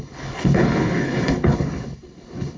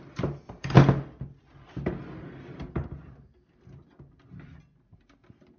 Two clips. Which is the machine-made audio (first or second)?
first